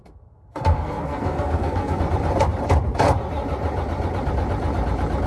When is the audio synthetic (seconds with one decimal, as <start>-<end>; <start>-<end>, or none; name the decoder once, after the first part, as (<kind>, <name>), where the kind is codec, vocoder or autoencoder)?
0.0-2.0 (codec, SNAC)